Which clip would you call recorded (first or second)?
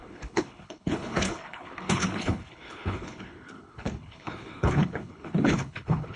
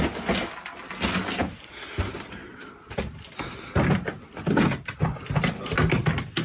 second